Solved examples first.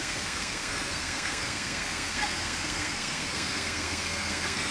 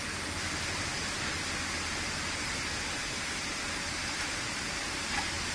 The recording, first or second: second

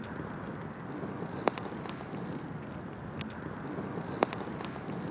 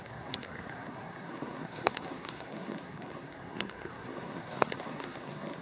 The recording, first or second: first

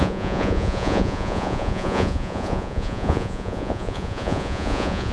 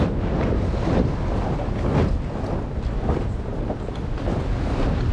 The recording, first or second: second